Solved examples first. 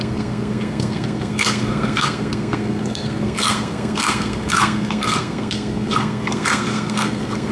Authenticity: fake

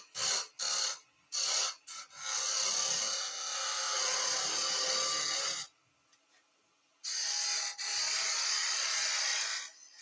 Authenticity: real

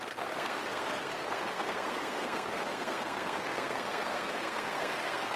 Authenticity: fake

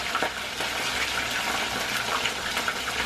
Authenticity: real